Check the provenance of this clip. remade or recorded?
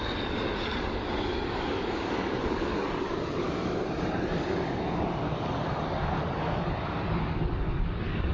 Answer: remade